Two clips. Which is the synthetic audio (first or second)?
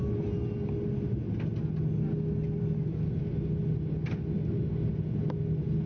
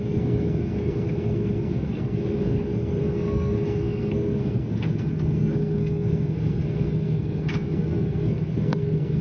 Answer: second